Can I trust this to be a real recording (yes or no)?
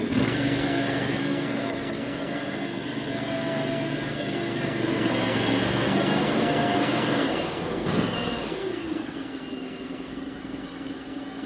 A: no